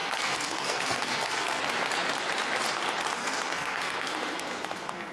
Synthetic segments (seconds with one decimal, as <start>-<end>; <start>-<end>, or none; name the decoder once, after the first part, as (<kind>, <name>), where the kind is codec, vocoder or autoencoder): 0.0-1.6 (codec, SNAC); 3.2-5.1